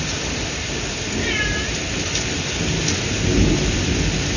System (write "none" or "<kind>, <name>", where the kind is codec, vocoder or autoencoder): none